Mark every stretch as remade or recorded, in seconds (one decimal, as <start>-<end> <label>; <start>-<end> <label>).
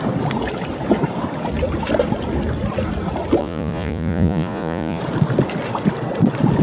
0.0-3.4 recorded; 3.4-5.0 remade; 5.0-6.6 recorded